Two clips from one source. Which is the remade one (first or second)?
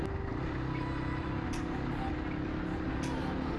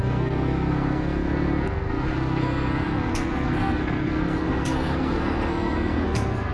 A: second